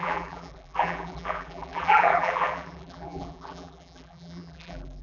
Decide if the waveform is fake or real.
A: fake